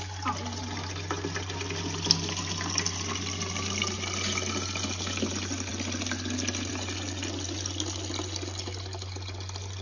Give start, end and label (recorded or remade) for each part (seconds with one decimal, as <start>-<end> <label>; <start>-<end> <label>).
0.0-9.8 recorded